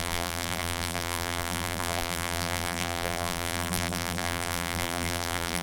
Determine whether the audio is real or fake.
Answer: fake